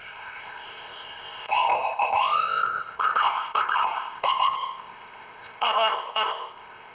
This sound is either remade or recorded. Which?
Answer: remade